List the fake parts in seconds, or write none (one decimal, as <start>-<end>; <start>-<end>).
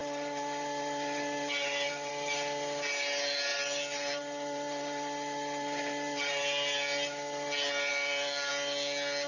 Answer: 0.0-2.1; 3.5-6.4; 7.9-8.5